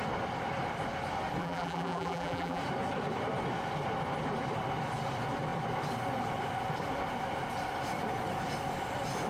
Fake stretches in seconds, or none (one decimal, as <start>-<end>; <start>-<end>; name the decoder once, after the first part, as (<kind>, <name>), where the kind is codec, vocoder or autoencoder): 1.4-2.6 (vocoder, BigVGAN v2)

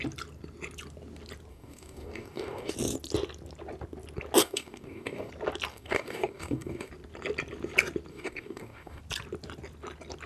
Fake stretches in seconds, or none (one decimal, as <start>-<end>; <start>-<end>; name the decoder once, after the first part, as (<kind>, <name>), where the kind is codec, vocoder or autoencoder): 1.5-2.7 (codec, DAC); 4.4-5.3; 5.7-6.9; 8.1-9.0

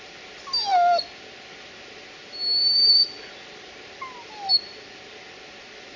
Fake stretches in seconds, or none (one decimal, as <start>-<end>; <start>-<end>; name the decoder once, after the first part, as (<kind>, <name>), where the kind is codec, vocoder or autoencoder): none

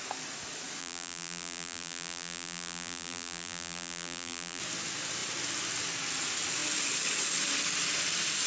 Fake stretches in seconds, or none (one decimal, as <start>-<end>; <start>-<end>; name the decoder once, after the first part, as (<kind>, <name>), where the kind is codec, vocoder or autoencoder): 0.8-4.6 (vocoder, BigVGAN v2)

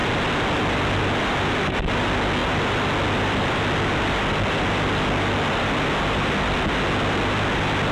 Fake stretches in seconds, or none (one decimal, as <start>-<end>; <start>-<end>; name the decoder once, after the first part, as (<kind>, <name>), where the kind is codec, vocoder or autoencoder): none

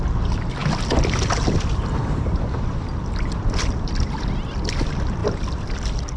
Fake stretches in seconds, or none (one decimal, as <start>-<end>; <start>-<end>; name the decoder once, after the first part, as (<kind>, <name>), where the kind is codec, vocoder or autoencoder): 0.6-4.3 (vocoder, BigVGAN v2); 5.2-6.2

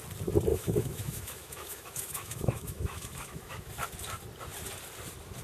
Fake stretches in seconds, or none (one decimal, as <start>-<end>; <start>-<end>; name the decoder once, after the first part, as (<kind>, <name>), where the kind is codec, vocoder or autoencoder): 0.5-3.7 (autoencoder, DAC-VAE)

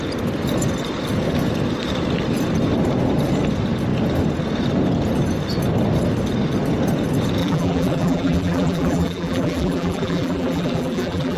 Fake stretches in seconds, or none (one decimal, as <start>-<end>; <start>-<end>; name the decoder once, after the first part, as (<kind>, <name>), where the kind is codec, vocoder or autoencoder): 7.4-11.4 (vocoder, BigVGAN v2)